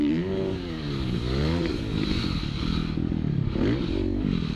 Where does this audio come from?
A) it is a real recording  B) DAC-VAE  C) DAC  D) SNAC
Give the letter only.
C